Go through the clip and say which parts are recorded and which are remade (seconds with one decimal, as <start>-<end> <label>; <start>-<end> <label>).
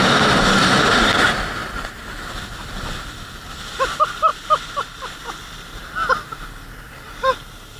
0.0-5.8 recorded; 5.8-7.1 remade; 7.1-7.8 recorded